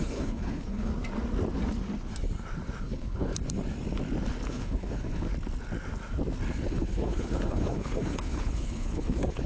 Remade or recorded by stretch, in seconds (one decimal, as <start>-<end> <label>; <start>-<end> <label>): 0.0-0.9 remade; 0.9-2.8 recorded; 2.8-3.3 remade; 3.3-4.5 recorded; 4.5-5.3 remade; 5.3-6.6 recorded; 6.6-9.5 remade